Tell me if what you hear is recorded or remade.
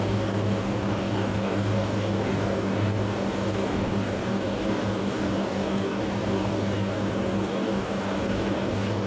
remade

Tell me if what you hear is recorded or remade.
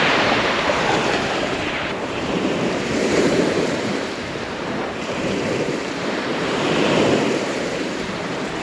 remade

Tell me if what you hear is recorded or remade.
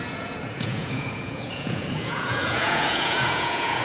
remade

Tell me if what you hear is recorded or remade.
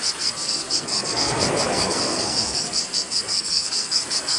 remade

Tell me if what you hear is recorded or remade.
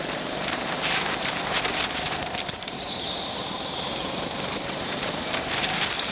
remade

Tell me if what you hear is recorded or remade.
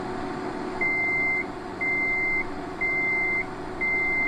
recorded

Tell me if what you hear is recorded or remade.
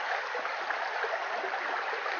recorded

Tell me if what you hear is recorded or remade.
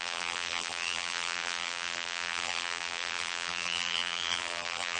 remade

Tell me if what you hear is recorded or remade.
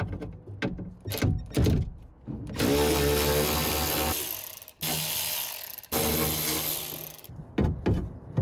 recorded